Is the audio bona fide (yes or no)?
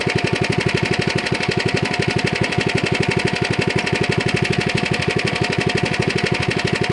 yes